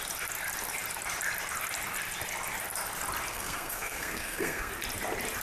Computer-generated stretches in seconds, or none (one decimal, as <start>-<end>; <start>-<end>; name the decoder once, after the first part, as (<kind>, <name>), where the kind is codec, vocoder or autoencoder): 3.3-4.7 (codec, SNAC)